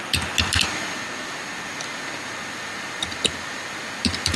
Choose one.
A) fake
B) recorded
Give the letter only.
B